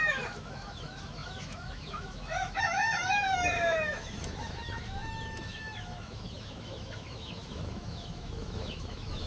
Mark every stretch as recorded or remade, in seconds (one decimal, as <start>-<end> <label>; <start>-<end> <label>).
0.0-9.3 remade